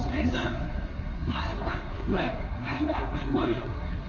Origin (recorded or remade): remade